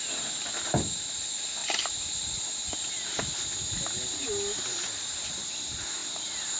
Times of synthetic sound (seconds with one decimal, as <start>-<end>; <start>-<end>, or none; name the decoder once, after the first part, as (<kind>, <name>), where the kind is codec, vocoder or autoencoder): none